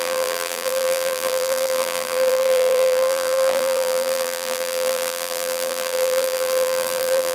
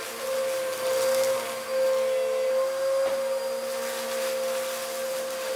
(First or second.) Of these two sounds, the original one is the second